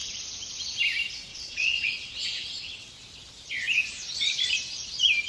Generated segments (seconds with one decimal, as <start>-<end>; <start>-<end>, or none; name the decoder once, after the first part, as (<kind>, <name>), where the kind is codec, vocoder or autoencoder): 1.3-2.9 (vocoder, WaveNeXt)